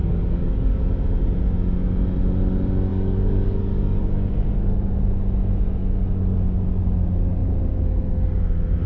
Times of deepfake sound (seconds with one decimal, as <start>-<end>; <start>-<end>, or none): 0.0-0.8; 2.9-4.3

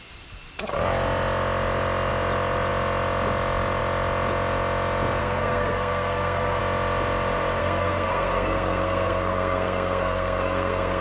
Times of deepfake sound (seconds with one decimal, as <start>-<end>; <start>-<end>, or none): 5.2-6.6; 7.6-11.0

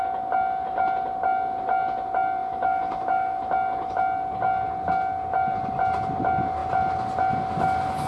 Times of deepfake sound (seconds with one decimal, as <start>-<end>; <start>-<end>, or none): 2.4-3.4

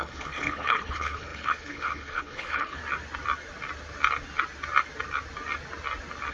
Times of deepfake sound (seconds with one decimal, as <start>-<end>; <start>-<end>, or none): 0.0-2.8